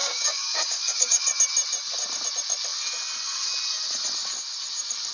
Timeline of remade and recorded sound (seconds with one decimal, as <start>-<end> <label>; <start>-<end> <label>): 0.0-1.2 remade; 1.2-5.1 recorded